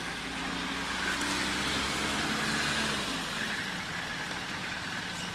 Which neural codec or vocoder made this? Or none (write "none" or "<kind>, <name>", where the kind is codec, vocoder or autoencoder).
none